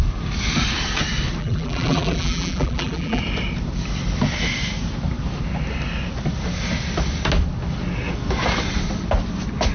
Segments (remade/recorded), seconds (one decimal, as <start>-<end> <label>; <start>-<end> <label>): 0.0-1.4 recorded; 1.4-3.2 remade; 3.2-9.7 recorded